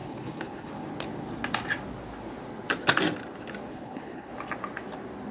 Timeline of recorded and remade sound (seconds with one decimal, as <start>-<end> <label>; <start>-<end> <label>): 0.0-0.7 remade; 0.7-3.7 recorded; 3.7-4.3 remade; 4.3-5.3 recorded

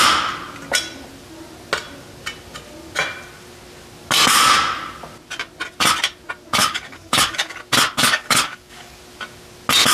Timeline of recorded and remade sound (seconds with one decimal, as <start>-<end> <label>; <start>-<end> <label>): 0.0-6.6 recorded; 6.6-7.6 remade; 7.6-8.0 recorded; 8.0-9.0 remade; 9.0-9.9 recorded

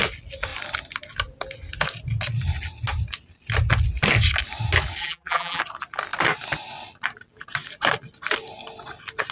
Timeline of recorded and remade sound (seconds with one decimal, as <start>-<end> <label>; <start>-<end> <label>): 0.0-5.0 recorded; 5.0-5.6 remade; 5.6-9.3 recorded

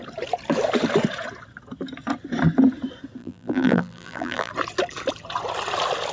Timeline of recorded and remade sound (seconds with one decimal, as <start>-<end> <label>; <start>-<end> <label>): 0.0-3.2 recorded; 3.2-4.5 remade; 4.5-6.1 recorded

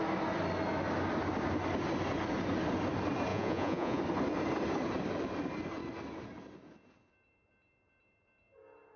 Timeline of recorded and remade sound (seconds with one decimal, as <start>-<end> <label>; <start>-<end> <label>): 0.0-3.3 recorded; 3.3-4.0 remade; 4.0-9.0 recorded

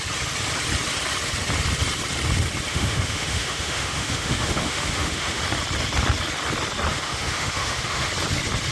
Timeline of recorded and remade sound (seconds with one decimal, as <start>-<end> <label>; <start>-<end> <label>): 0.0-2.7 recorded; 2.7-5.4 remade; 5.4-6.9 recorded; 6.9-8.1 remade; 8.1-8.7 recorded